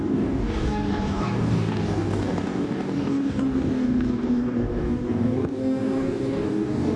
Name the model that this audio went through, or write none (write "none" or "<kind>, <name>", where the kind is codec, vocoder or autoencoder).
codec, DAC